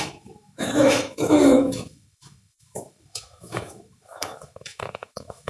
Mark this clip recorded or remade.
remade